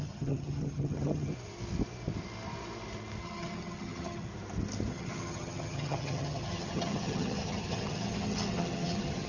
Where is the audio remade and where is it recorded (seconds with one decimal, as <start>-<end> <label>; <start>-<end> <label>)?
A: 0.0-1.3 remade; 1.3-3.2 recorded; 3.2-4.3 remade; 4.3-4.9 recorded; 4.9-9.3 remade